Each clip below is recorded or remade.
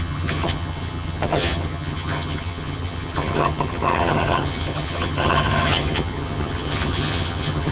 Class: remade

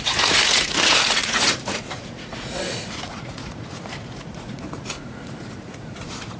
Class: remade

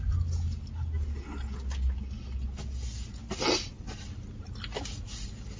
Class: recorded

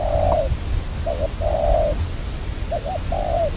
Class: recorded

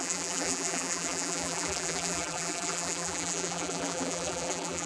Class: remade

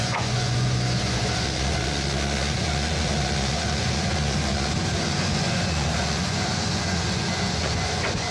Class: remade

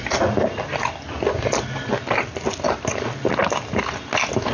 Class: recorded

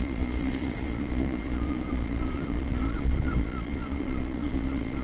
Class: remade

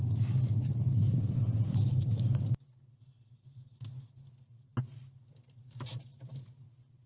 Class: recorded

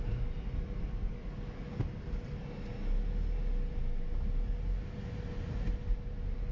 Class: recorded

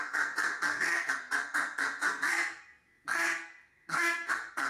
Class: remade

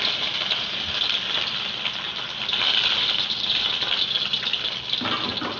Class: recorded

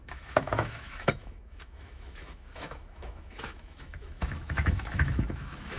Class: remade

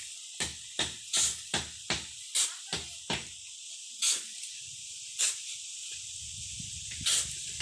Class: recorded